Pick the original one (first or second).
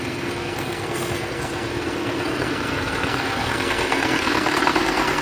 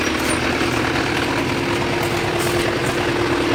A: second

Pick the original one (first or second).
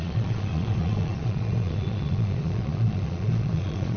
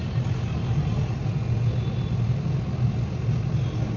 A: second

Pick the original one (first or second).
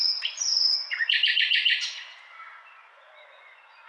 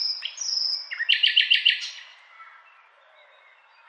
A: second